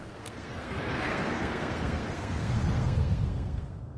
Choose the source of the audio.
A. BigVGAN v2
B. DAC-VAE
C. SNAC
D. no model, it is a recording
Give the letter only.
C